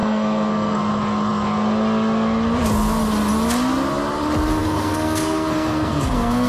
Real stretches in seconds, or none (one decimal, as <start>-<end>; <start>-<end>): 0.9-4.6